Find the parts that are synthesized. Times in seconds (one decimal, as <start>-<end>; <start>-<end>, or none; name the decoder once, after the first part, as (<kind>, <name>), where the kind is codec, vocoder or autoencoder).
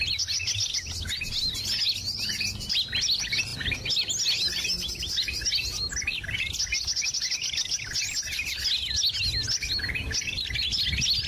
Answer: none